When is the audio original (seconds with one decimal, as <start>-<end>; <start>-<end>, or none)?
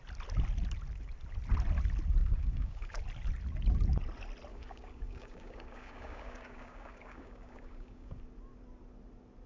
0.0-2.2; 3.0-4.5; 8.2-9.5